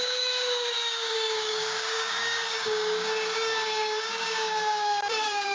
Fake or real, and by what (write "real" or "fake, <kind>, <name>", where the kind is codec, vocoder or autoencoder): fake, codec, DAC